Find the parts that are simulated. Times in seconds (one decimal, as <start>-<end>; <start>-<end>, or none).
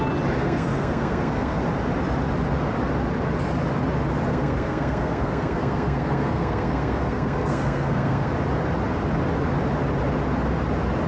0.4-1.6; 4.3-8.3